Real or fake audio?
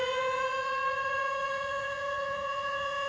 fake